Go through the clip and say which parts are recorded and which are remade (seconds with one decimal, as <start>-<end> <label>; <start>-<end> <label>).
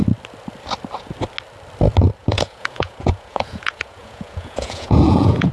0.0-2.2 recorded; 2.2-5.5 remade